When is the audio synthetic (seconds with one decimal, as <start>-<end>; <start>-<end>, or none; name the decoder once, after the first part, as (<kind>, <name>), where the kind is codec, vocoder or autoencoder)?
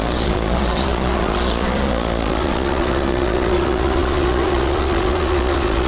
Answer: 0.0-5.9 (vocoder, Vocos)